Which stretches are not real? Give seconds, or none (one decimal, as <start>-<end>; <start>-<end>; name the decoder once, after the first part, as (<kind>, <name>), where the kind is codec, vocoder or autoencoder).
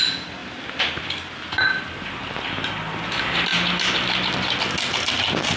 none